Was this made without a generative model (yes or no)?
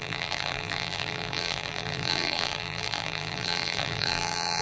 no